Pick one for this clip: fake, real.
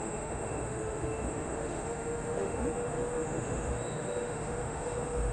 fake